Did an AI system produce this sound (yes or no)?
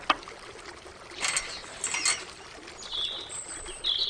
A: no